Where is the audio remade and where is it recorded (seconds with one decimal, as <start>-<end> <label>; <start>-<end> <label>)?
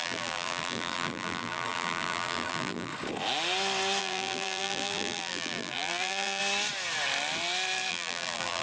0.0-2.9 remade; 2.9-4.0 recorded; 4.0-6.4 remade; 6.4-7.9 recorded; 7.9-8.6 remade